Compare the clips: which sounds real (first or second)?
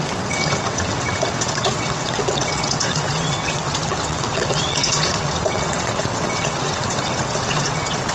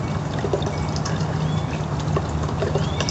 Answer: second